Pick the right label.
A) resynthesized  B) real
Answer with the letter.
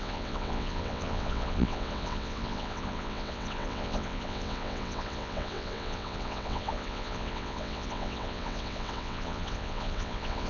A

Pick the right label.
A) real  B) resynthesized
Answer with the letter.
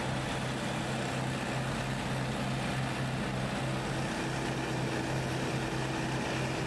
A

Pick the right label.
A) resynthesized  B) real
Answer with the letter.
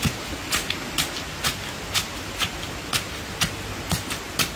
B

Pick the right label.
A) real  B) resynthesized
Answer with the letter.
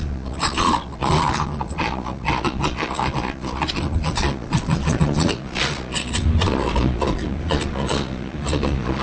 B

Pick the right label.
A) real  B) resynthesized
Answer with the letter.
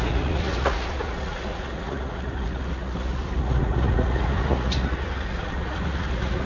B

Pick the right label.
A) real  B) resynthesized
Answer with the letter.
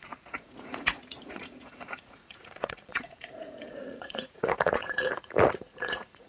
B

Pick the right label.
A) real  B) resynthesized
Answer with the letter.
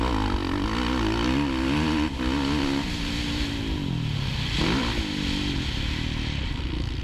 A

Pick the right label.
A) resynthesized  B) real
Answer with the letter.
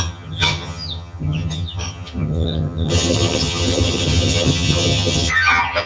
A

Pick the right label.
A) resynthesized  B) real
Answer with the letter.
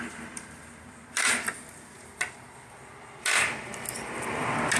B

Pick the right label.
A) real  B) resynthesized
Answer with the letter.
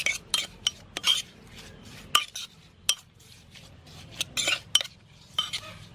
A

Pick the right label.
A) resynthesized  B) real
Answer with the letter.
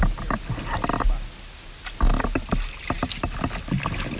B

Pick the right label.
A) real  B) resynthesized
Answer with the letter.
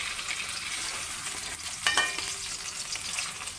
A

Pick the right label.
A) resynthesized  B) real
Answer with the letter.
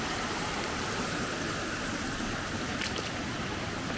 B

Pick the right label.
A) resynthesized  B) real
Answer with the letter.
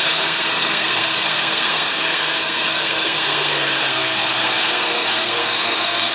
A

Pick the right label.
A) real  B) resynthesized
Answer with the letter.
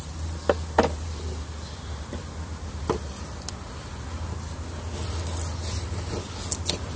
A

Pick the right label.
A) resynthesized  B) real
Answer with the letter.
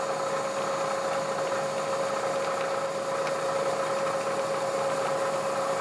B